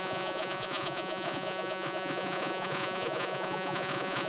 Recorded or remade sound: remade